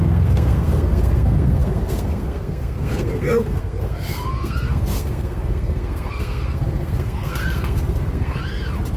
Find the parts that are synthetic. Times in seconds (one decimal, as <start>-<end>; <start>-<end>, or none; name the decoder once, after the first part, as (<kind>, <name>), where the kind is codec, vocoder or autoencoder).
0.0-8.4 (codec, SNAC)